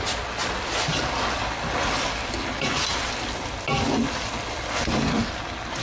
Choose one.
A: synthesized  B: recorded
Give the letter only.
B